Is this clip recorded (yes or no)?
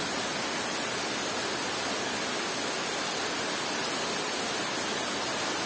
yes